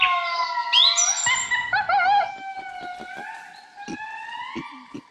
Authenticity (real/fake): real